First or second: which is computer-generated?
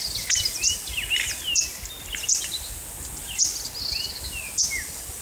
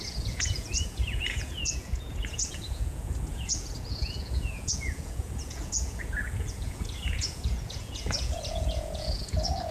second